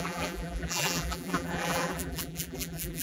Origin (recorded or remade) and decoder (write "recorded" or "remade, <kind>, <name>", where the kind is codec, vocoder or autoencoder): remade, vocoder, BigVGAN v2